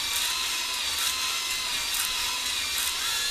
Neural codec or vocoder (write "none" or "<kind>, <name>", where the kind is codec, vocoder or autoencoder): none